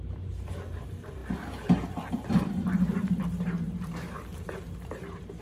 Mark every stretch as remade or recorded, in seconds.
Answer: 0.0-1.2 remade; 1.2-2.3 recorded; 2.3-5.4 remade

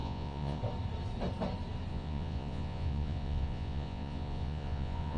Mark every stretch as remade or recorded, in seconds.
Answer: 0.0-0.6 remade; 0.6-1.9 recorded; 1.9-5.2 remade

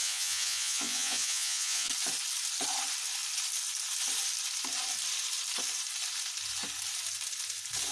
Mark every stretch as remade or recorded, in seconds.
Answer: 0.0-1.9 remade; 1.9-7.9 recorded